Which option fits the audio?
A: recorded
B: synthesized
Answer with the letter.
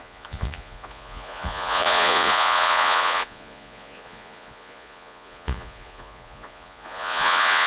B